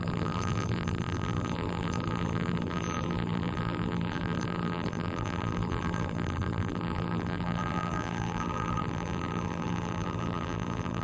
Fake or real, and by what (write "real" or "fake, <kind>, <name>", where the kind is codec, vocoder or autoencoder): fake, vocoder, BigVGAN v2